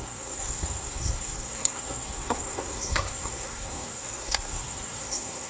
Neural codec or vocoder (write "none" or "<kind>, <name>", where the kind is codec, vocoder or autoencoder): codec, SNAC